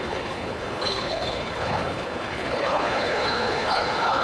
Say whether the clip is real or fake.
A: fake